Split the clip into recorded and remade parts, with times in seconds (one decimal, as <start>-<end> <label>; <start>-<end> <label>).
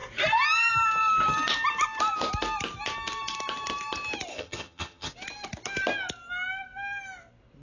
0.0-4.3 recorded; 4.3-5.1 remade; 5.1-7.6 recorded